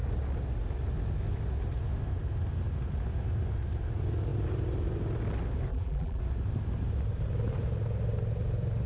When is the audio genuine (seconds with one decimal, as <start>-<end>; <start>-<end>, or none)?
0.0-5.7; 6.2-8.9